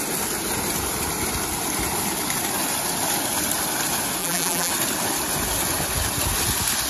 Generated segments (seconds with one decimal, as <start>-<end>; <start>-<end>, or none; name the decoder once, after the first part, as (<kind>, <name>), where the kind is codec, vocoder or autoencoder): 4.2-4.7 (vocoder, BigVGAN v2)